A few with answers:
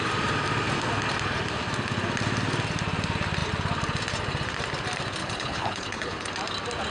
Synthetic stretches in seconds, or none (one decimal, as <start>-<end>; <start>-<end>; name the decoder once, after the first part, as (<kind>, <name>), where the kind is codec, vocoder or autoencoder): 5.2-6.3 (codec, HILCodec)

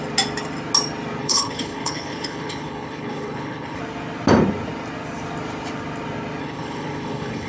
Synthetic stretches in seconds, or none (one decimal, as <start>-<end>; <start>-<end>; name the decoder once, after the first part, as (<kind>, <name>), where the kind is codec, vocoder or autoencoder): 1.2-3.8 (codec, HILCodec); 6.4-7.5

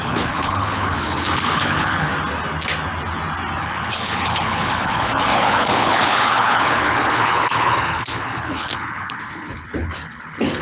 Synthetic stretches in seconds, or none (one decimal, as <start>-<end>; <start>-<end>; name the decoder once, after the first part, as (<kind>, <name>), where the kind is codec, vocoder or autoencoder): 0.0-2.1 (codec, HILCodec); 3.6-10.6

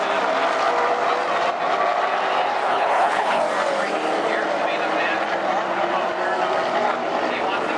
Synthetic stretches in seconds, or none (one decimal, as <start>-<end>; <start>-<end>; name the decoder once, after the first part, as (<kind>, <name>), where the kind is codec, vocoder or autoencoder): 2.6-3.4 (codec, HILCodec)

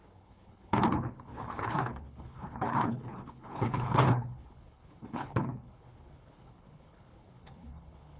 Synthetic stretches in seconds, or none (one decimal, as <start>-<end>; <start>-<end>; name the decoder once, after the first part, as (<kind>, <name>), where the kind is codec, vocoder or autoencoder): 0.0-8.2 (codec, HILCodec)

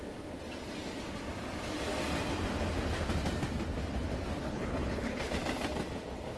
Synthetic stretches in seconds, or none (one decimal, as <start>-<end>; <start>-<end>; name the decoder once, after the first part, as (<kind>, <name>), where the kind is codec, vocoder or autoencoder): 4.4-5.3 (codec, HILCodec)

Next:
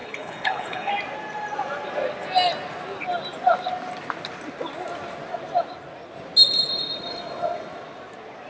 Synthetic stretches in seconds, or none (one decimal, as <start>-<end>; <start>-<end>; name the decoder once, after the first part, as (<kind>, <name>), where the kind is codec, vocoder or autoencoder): 0.0-0.9 (codec, HILCodec)

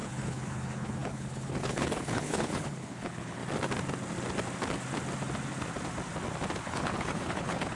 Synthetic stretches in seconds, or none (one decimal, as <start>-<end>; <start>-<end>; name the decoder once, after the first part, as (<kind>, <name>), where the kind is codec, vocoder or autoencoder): 0.0-3.4 (codec, HILCodec); 6.7-7.7